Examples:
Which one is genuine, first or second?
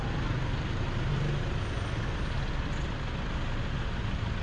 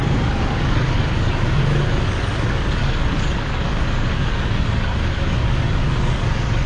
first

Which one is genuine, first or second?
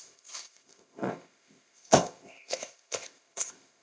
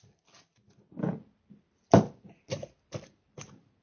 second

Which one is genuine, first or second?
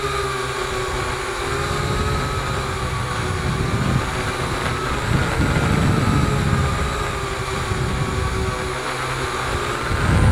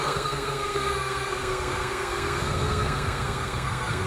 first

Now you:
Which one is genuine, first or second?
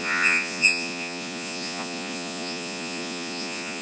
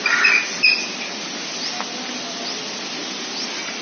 second